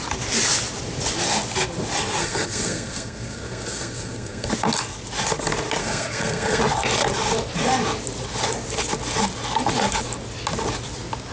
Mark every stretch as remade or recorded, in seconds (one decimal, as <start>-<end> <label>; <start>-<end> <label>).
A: 0.0-2.2 recorded; 2.2-4.5 remade; 4.5-5.8 recorded; 5.8-6.6 remade; 6.6-11.3 recorded